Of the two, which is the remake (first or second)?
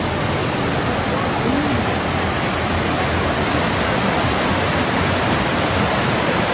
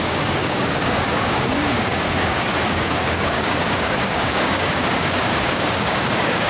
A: second